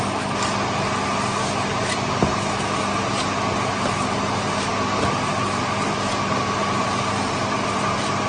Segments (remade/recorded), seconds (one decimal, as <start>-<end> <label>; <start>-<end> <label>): 0.0-8.3 recorded